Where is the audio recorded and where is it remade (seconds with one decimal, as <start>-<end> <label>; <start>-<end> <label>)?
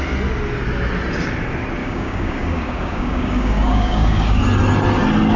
0.0-1.8 recorded; 1.8-4.4 remade; 4.4-5.4 recorded